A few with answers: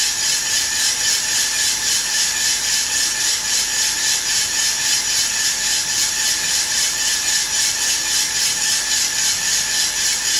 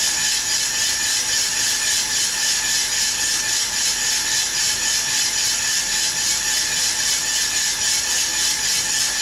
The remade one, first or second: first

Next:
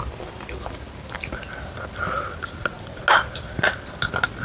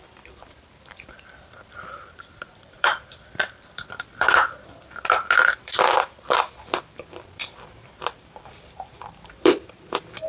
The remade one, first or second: second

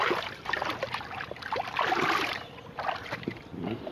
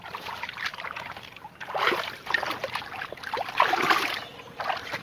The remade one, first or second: first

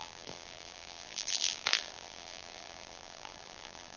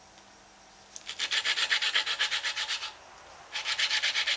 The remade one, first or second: first